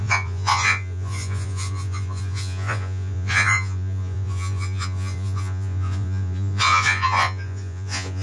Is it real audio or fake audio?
fake